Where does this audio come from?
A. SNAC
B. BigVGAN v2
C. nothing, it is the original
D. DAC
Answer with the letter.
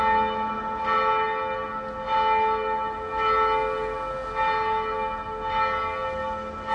C